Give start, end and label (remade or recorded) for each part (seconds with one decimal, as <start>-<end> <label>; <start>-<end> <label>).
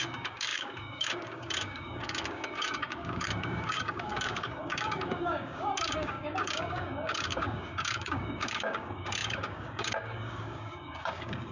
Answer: 0.0-11.5 remade